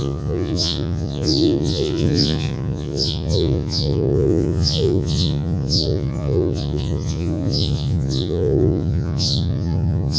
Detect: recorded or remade remade